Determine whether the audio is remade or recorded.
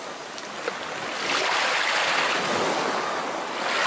recorded